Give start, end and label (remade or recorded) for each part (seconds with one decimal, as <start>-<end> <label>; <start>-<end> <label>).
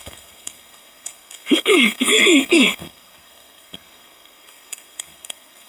0.0-5.7 remade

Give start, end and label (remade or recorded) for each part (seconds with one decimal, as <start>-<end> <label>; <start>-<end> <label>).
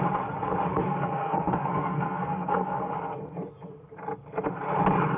0.0-0.7 recorded; 0.7-2.9 remade; 2.9-5.2 recorded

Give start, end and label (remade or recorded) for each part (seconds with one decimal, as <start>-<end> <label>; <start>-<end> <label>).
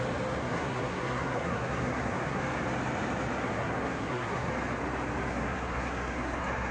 0.0-0.4 recorded; 0.4-2.4 remade; 2.4-3.4 recorded; 3.4-4.5 remade; 4.5-5.3 recorded; 5.3-6.7 remade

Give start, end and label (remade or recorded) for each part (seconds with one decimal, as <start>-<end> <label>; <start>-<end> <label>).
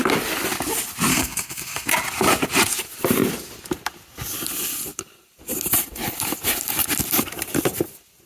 0.0-1.1 recorded; 1.1-1.9 remade; 1.9-8.3 recorded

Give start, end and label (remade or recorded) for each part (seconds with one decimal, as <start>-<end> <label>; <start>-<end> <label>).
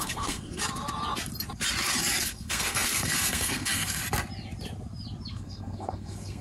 0.0-0.6 remade; 0.6-2.2 recorded; 2.2-4.0 remade; 4.0-5.3 recorded; 5.3-6.4 remade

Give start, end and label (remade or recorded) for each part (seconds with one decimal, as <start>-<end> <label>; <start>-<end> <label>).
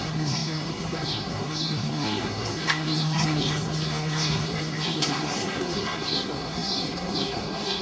0.0-7.8 remade